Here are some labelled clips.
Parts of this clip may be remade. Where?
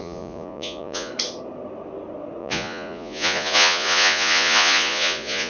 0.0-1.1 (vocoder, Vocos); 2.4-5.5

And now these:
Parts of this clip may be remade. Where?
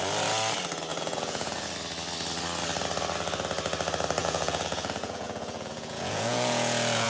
0.9-1.7 (vocoder, Vocos); 4.2-7.1